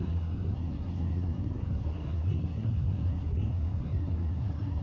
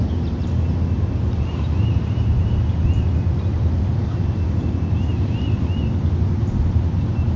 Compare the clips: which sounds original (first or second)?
second